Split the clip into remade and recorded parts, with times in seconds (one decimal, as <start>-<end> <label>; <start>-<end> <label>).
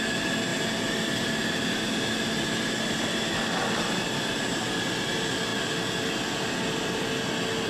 0.0-7.7 recorded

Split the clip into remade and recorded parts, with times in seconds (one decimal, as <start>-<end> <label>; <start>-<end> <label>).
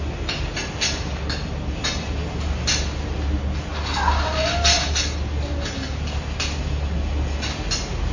0.0-8.1 recorded